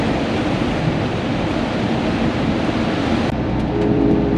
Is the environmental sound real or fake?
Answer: fake